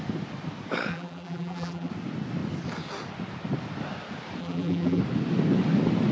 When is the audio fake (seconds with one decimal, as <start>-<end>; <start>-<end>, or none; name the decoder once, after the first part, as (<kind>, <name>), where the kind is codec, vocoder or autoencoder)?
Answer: 0.9-1.9 (vocoder, BigVGAN v2); 4.4-5.0